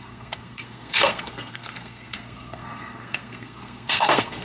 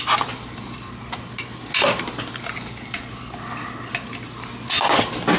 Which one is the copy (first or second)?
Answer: first